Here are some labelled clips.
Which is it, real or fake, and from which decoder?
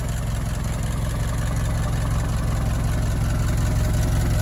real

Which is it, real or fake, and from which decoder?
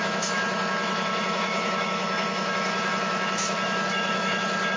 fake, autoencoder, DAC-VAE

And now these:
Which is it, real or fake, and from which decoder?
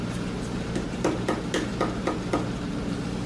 real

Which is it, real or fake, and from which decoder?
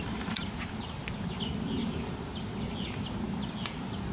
real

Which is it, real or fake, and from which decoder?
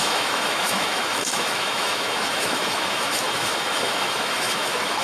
fake, autoencoder, DAC-VAE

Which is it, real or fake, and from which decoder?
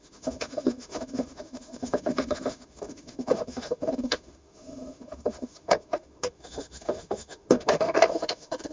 fake, autoencoder, DAC-VAE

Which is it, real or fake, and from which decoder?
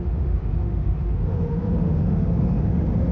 fake, autoencoder, DAC-VAE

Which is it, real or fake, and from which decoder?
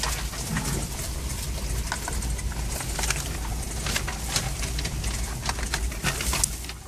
real